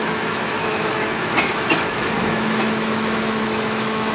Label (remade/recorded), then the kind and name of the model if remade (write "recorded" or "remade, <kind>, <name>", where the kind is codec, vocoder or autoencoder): remade, autoencoder, DAC-VAE